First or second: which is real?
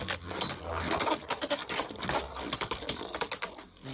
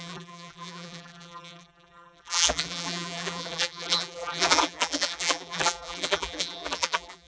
first